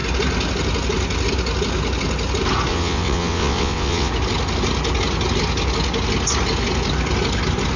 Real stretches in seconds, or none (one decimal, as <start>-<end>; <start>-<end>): 0.0-2.7; 4.1-7.8